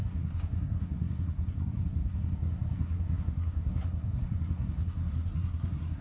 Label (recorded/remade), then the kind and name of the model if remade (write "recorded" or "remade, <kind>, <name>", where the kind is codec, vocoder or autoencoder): remade, codec, SNAC